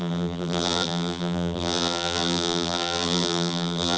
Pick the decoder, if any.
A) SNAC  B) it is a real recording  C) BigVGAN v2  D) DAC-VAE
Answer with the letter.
C